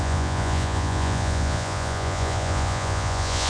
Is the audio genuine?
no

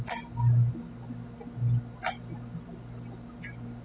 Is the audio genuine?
yes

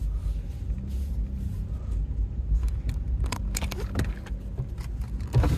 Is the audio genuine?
yes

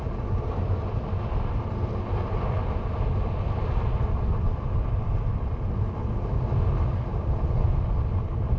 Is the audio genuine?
yes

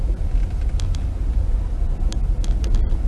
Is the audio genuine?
yes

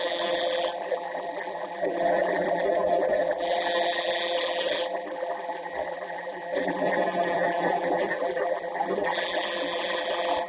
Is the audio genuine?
no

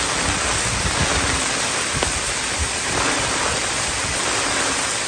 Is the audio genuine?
yes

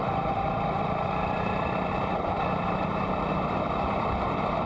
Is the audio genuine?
no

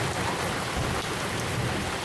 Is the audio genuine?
yes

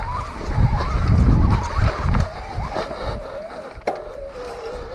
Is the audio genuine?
yes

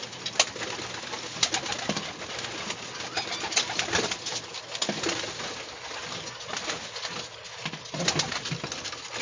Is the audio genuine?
yes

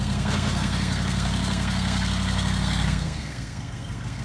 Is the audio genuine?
no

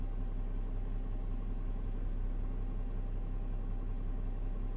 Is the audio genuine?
yes